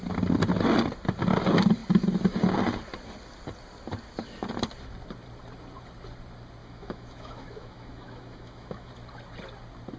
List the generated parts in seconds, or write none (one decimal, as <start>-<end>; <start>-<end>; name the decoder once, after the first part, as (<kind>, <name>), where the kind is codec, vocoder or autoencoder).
6.6-8.9 (autoencoder, DAC-VAE)